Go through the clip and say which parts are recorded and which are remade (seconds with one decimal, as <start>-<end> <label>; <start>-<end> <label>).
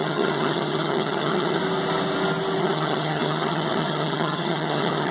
0.0-1.6 remade; 1.6-2.6 recorded; 2.6-5.1 remade